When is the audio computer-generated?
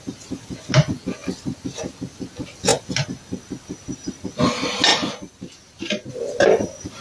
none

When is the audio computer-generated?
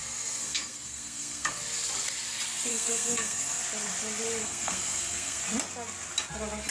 0.0-1.6; 2.7-3.6; 4.4-5.4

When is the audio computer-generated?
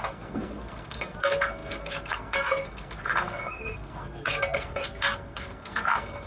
0.0-6.3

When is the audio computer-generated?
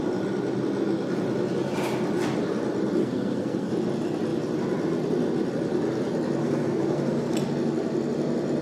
3.0-3.7; 6.4-7.3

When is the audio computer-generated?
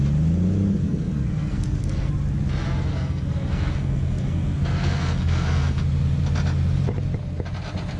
0.8-2.1; 2.9-5.8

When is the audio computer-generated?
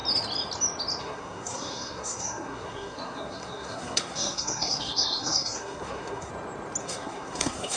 1.0-6.3; 6.8-7.8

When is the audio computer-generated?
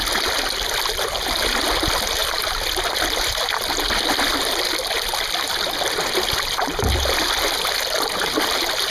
none